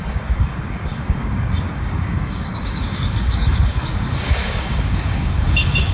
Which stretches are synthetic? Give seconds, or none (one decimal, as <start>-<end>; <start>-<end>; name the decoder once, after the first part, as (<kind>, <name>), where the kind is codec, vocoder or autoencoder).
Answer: 0.0-5.9 (codec, DAC)